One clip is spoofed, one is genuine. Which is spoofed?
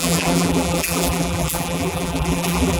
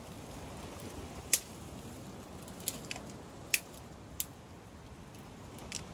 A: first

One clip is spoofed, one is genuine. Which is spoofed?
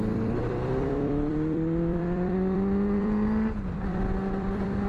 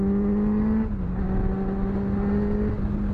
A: first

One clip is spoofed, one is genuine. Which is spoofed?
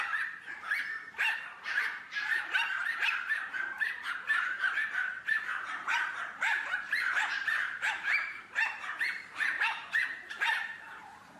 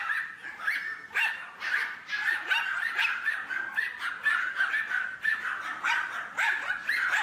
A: first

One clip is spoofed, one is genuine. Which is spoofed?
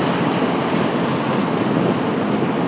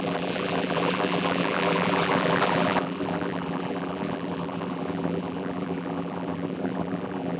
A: second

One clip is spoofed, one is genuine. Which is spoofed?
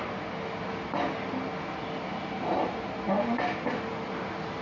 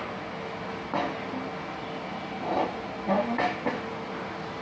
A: first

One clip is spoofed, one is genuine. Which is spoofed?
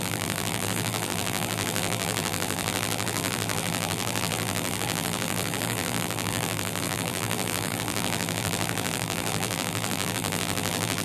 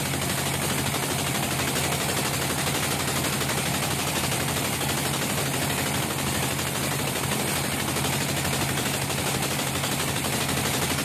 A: first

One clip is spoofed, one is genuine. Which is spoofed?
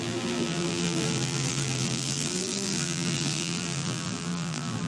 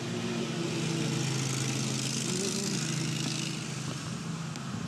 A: first